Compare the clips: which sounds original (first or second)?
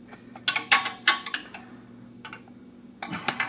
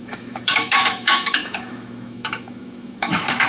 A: first